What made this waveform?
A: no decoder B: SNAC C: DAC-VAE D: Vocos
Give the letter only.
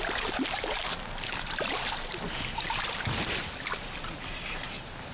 A